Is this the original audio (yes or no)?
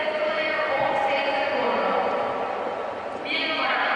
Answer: yes